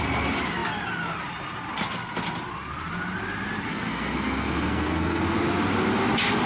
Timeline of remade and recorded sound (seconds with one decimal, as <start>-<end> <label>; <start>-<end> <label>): 0.0-3.7 recorded; 3.7-5.2 remade; 5.2-6.5 recorded